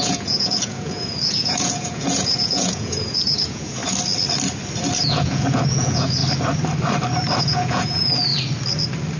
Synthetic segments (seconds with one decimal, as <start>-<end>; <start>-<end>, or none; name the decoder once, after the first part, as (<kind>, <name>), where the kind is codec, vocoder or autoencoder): 0.0-3.8 (vocoder, Vocos); 5.0-6.2; 7.4-8.3